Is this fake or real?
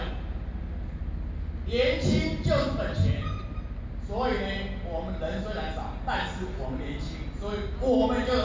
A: real